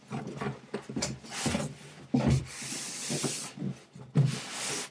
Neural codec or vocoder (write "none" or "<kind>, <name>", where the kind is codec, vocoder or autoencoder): none